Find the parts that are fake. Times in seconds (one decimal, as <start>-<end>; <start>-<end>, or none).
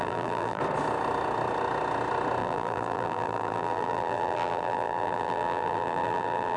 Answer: 0.0-0.6; 2.4-6.6